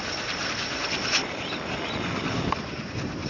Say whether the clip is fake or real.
real